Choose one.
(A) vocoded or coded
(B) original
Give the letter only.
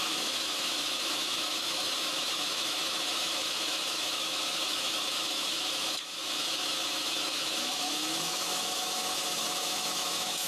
A